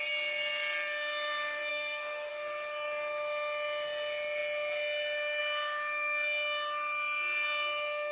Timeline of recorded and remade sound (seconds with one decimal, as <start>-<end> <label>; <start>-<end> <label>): 0.0-1.7 recorded; 1.7-2.3 remade; 2.3-8.1 recorded